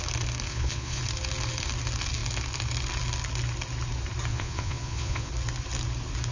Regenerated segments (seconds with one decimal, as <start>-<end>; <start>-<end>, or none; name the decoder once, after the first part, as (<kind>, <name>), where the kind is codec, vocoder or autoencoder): 0.5-1.0 (vocoder, Vocos); 4.3-5.3